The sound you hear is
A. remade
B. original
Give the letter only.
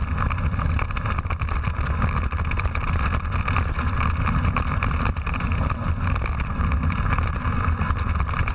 B